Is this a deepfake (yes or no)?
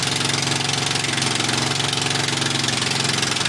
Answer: no